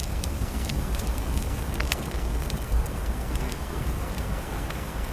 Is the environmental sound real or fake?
fake